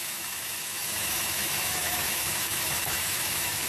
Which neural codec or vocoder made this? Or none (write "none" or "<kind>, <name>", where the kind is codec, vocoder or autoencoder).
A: autoencoder, DAC-VAE